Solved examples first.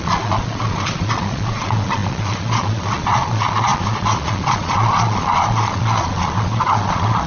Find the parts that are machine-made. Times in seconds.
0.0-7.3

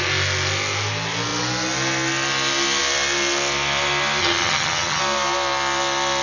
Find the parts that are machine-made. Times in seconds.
4.2-5.0

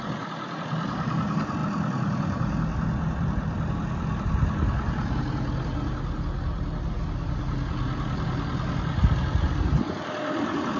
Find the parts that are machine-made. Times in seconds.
none

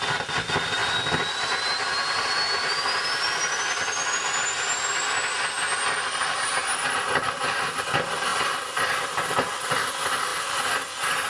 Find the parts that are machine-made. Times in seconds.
8.3-9.8; 10.3-11.3